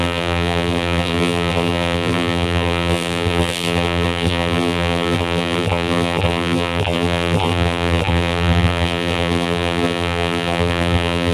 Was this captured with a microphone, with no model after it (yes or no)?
no